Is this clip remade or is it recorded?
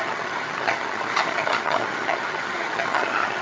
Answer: remade